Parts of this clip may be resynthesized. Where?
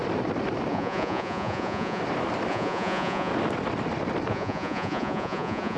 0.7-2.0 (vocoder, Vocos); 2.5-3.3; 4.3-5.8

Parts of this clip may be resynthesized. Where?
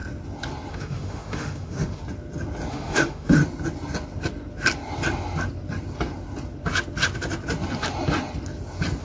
0.7-2.0 (autoencoder, DAC-VAE); 2.7-3.4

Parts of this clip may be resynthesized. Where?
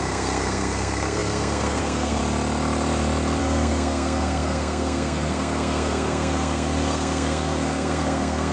0.0-2.2 (codec, SNAC); 3.4-8.5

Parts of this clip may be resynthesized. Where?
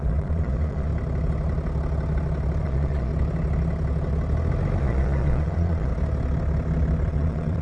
0.0-0.9 (vocoder, Vocos); 2.6-3.1; 4.8-5.9; 7.1-7.6